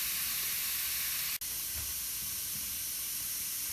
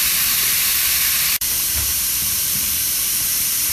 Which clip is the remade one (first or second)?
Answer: second